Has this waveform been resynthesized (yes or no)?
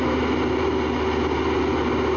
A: no